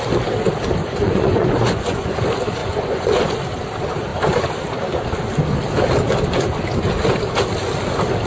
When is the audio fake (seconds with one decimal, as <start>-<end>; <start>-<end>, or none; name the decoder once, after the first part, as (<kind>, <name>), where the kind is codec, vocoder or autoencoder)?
0.8-2.2 (vocoder, Vocos); 2.6-3.3